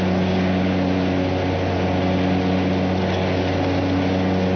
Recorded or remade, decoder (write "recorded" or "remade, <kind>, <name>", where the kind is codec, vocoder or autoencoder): recorded